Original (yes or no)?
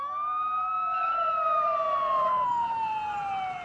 yes